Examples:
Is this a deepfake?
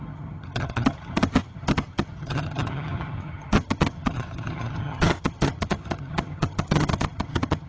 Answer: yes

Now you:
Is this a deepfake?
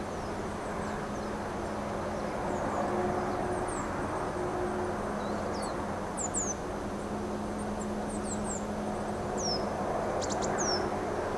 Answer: no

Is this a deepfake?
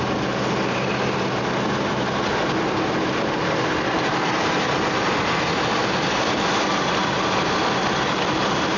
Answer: no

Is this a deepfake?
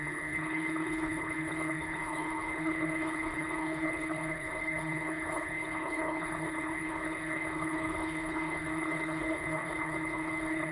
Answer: yes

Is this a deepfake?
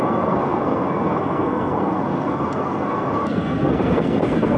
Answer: yes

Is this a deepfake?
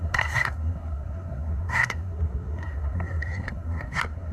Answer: yes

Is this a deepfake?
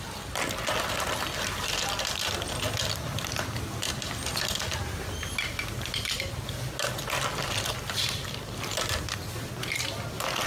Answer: no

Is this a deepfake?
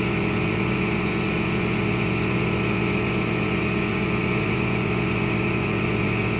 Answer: yes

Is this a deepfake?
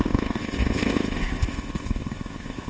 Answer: yes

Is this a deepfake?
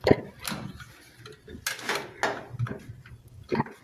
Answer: no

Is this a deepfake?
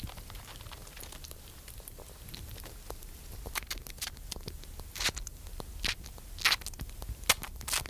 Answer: no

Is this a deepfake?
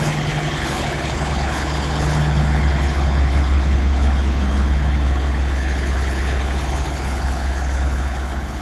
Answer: yes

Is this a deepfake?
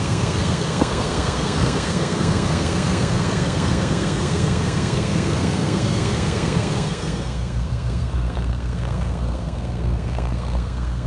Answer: yes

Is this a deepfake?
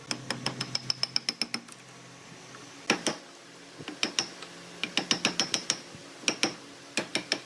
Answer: no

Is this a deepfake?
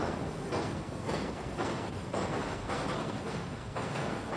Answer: yes